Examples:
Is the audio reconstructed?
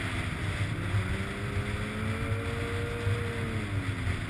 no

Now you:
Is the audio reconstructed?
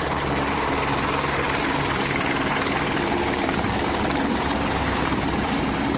yes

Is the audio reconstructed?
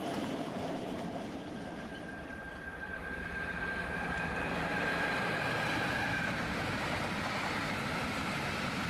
yes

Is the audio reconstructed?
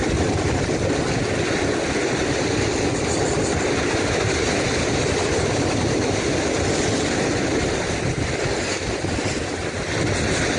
no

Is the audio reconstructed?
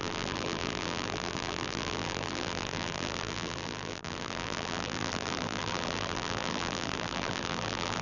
yes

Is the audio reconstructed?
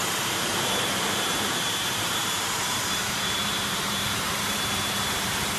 yes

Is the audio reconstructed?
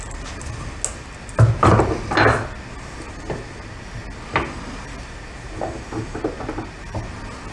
no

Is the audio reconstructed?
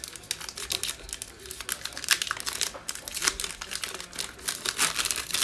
no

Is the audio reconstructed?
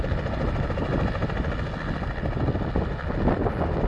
no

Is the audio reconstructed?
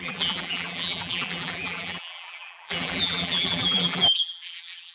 yes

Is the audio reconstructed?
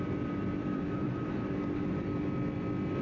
yes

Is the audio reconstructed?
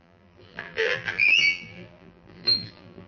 yes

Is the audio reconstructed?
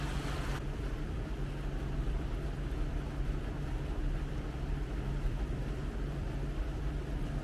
yes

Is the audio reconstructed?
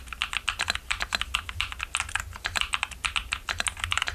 no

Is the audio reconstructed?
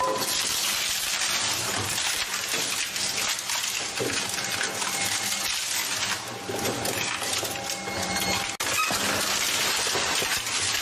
no